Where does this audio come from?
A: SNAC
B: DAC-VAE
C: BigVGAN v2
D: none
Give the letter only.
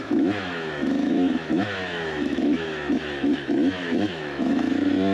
B